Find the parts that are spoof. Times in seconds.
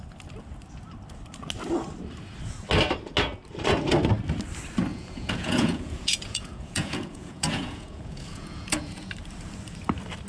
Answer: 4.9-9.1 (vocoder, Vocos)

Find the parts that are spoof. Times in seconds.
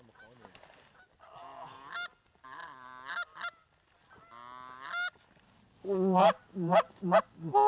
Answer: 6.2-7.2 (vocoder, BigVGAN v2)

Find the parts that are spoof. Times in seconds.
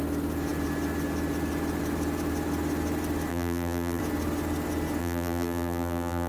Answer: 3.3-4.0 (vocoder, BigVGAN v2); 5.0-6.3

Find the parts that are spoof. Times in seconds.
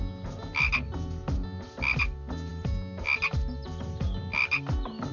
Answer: none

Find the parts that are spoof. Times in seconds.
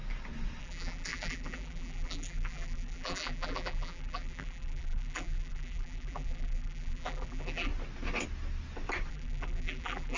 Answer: 0.6-7.7 (vocoder, BigVGAN v2); 9.1-10.2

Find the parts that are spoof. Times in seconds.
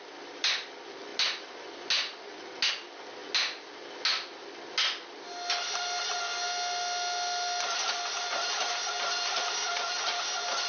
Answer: none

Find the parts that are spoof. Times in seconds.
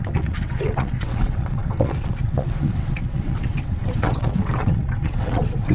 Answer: 0.0-5.7 (vocoder, WaveNeXt)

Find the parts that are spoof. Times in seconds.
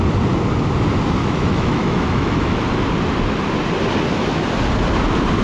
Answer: 1.2-2.6 (autoencoder, DAC-VAE)